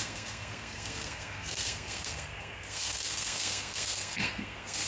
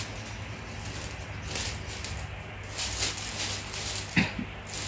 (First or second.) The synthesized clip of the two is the first